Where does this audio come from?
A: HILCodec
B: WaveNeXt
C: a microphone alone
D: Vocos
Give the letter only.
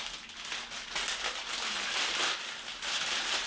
C